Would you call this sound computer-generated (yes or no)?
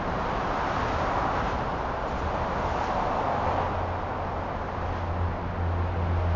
no